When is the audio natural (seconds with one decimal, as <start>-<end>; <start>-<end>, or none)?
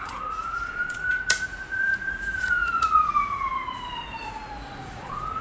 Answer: none